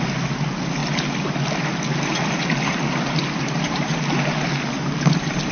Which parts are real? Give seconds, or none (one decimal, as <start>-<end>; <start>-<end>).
0.0-5.5